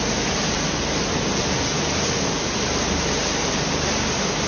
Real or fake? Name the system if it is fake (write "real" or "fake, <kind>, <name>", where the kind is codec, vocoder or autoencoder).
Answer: real